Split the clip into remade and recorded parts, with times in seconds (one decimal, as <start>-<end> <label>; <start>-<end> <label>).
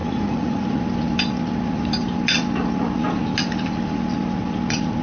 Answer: 0.0-0.8 remade; 0.8-5.0 recorded